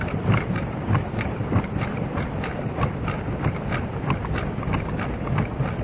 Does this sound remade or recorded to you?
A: recorded